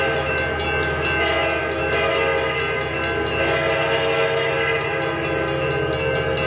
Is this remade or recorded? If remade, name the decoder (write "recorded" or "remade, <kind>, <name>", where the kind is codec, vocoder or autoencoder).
recorded